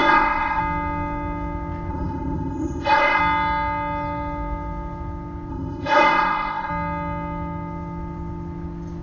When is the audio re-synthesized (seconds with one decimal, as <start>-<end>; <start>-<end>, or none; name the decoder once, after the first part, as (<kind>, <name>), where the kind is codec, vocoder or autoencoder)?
0.0-0.6 (codec, ZipCodec); 1.9-3.2; 5.5-6.7